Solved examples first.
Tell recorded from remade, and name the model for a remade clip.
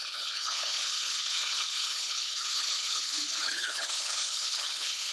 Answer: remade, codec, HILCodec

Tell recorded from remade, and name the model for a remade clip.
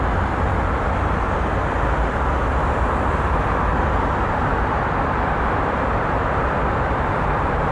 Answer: recorded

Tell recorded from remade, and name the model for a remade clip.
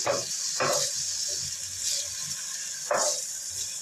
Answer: recorded